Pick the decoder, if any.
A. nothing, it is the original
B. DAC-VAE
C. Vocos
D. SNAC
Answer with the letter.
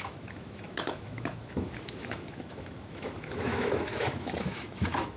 B